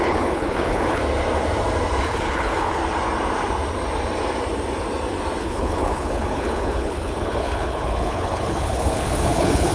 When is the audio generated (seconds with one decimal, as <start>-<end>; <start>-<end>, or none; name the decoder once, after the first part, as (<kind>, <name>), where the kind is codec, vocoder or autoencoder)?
0.0-1.0 (codec, HILCodec); 2.0-2.8; 5.4-9.7